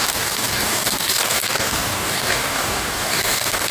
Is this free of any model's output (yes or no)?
no